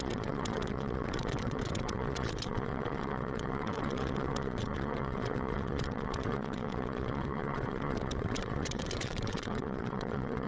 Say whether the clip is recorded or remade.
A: remade